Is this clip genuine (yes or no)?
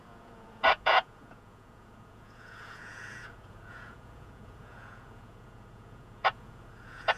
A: no